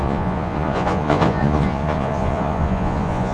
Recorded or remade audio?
remade